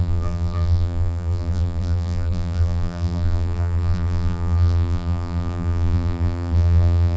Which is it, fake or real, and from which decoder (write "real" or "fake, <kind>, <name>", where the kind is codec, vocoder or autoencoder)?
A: fake, vocoder, BigVGAN v2